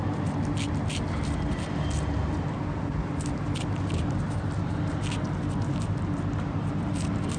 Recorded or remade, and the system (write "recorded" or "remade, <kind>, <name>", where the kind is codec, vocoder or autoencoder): recorded